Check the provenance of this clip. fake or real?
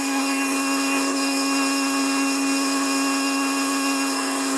fake